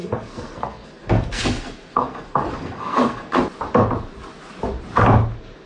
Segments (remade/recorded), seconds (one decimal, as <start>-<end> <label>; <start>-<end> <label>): 0.0-3.4 remade; 3.4-5.7 recorded